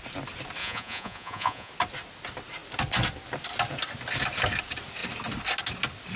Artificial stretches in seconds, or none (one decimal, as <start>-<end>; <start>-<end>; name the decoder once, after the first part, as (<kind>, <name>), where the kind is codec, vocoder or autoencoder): 0.6-1.7 (vocoder, Vocos)